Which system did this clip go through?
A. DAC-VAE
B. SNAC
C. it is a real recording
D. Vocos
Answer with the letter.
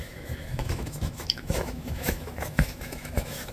A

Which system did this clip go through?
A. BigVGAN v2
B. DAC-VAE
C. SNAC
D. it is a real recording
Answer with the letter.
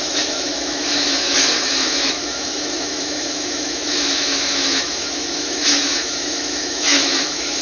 B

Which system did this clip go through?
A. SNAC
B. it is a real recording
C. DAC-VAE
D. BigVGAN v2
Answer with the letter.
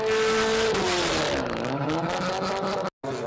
B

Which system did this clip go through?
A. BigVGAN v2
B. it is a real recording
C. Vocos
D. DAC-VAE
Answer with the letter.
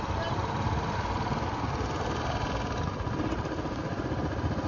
B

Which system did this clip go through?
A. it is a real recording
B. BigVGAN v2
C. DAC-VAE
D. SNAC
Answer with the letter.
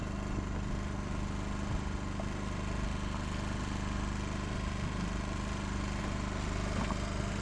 A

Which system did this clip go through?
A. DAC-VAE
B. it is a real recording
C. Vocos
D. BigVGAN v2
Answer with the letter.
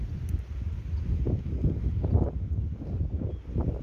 B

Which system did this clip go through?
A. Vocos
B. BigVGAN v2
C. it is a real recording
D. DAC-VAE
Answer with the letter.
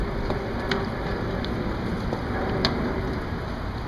C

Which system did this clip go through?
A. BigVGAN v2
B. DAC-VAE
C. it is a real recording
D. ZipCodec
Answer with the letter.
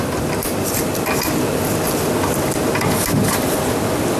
C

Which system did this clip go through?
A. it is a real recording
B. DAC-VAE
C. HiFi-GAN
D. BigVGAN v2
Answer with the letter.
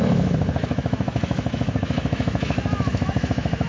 B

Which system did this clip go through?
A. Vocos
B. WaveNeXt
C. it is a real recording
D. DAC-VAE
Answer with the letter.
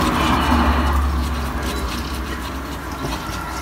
C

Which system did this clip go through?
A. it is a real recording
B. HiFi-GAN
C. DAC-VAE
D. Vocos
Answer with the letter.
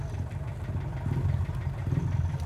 A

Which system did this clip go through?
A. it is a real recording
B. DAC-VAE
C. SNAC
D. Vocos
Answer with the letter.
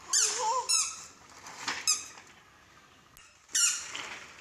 A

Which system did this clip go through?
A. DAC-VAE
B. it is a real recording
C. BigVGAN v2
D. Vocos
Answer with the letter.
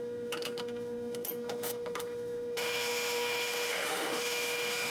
A